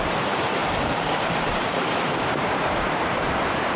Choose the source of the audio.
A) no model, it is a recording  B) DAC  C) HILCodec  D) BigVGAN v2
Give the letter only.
D